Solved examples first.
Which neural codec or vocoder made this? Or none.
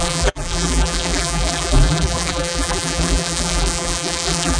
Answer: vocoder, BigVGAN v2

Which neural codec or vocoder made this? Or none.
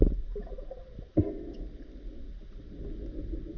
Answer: none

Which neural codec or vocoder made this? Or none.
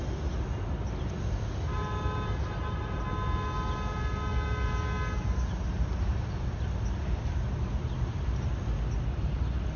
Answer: none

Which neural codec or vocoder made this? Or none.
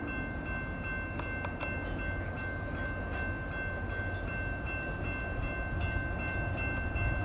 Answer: none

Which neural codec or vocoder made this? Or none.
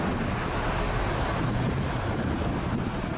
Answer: none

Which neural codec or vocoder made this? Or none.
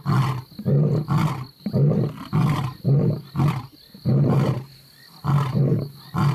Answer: none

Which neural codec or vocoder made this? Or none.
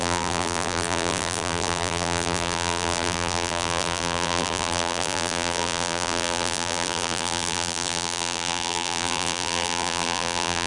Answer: vocoder, BigVGAN v2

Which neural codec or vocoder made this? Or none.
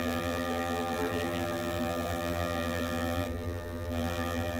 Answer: vocoder, BigVGAN v2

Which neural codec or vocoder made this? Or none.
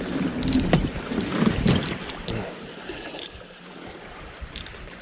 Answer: vocoder, BigVGAN v2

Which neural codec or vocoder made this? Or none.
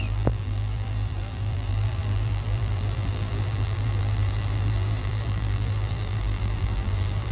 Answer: vocoder, BigVGAN v2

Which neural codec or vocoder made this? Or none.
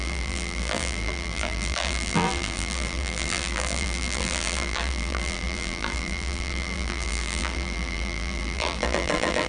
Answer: vocoder, BigVGAN v2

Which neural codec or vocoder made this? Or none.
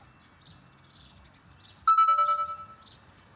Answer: none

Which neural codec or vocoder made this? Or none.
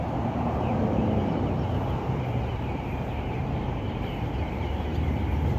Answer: vocoder, BigVGAN v2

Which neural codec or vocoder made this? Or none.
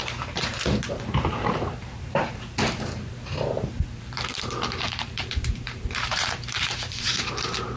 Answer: vocoder, BigVGAN v2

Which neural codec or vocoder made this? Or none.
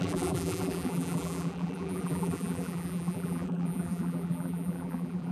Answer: vocoder, BigVGAN v2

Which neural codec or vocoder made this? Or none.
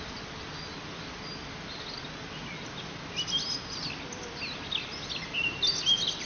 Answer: none